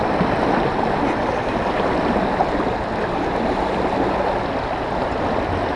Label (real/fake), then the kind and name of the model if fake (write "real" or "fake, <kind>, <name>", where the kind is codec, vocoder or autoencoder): real